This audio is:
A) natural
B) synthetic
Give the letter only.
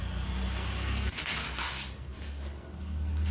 B